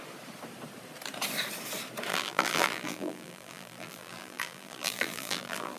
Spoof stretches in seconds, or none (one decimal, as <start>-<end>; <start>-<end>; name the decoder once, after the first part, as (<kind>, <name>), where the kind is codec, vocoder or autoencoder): 2.1-5.8 (vocoder, BigVGAN v2)